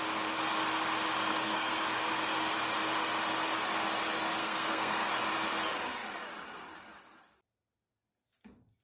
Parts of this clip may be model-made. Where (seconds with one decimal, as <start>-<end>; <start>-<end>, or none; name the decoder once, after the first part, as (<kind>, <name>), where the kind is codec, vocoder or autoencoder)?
1.3-1.8 (codec, SNAC); 4.4-5.1